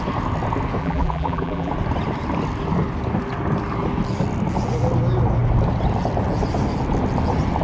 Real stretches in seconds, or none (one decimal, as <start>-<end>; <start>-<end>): 0.0-0.8; 1.7-7.6